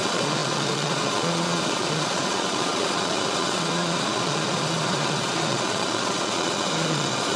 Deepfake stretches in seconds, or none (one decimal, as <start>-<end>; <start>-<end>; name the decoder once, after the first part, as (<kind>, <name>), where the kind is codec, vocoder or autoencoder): 0.0-7.4 (vocoder, Vocos)